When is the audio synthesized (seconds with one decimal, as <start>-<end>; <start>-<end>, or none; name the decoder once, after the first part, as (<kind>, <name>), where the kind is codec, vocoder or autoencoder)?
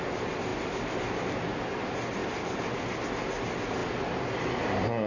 none